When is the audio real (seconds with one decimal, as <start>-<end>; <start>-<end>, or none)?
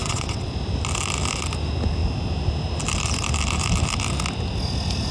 0.5-5.1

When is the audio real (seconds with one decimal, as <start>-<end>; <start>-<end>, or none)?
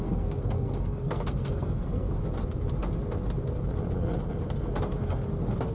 2.2-5.7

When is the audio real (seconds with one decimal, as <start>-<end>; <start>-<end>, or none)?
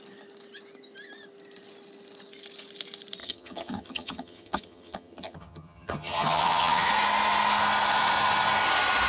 0.0-3.2; 6.9-9.1